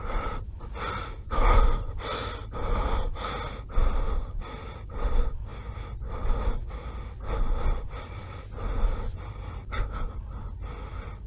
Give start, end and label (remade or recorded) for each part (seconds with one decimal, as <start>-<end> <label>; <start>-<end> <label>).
0.0-3.8 recorded; 3.8-4.4 remade; 4.4-11.3 recorded